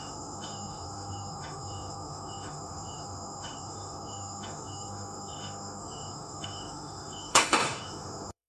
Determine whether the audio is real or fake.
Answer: fake